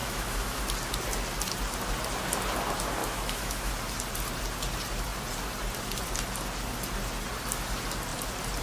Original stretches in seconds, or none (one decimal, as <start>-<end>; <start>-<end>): 0.6-3.0; 3.7-8.6

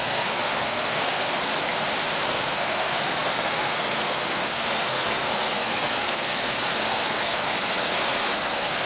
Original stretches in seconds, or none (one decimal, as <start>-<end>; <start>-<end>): 1.5-2.2

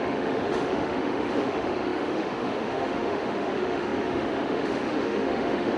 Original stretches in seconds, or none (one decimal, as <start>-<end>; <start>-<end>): none

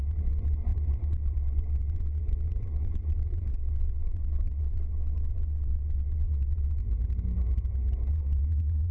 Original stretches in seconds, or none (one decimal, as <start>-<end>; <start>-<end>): 6.8-8.1

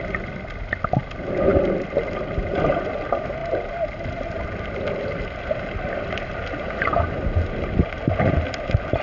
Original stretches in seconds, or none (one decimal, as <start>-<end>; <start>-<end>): 0.0-9.0

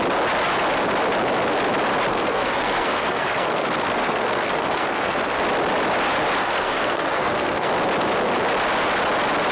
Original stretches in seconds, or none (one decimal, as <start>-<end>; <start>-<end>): 0.0-2.1; 5.4-6.4; 7.7-9.5

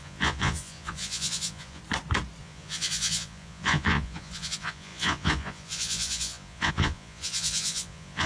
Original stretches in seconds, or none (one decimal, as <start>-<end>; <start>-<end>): 1.8-2.4

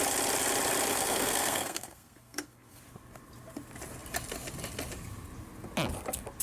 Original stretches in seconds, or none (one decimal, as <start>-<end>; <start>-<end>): 0.0-0.9; 2.8-6.4